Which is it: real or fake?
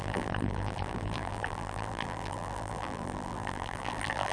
fake